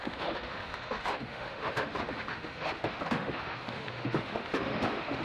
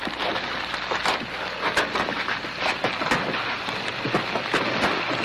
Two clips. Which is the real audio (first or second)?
second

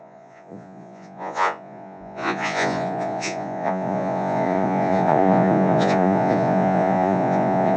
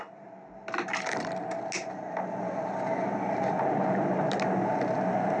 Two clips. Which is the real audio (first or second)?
second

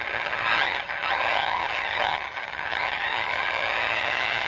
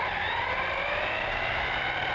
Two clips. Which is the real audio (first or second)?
second